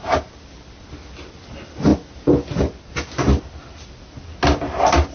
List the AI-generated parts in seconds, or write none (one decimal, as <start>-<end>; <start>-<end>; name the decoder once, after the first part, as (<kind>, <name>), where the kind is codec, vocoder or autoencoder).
none